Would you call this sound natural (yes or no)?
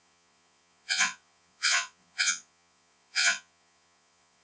no